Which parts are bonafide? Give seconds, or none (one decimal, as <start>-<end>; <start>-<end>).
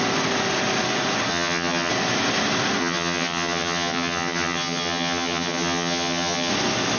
0.0-1.3; 1.9-2.8; 6.5-7.0